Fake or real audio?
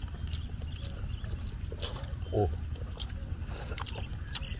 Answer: real